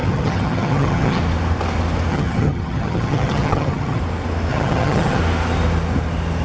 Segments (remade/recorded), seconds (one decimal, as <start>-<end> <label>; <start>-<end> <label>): 0.0-1.2 remade; 1.2-2.1 recorded; 2.1-4.0 remade; 4.0-4.5 recorded; 4.5-5.2 remade; 5.2-6.4 recorded

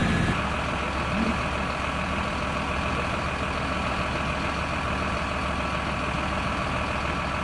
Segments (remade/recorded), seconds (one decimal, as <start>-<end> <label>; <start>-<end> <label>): 0.0-7.4 recorded

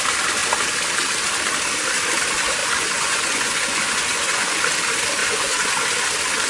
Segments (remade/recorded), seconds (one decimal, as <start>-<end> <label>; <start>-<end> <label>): 0.0-2.6 recorded; 2.6-4.6 remade; 4.6-5.2 recorded; 5.2-5.8 remade; 5.8-6.5 recorded

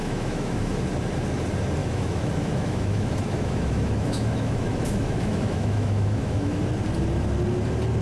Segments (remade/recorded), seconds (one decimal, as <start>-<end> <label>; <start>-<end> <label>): 0.0-0.8 remade; 0.8-1.8 recorded; 1.8-6.6 remade; 6.6-8.0 recorded

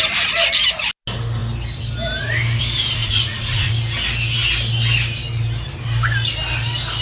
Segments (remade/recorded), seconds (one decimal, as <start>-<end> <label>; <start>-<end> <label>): 0.0-3.0 recorded; 3.0-3.7 remade; 3.7-7.0 recorded